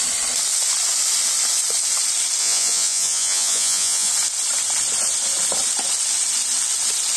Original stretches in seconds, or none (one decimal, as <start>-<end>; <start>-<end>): 0.0-2.4; 4.1-7.2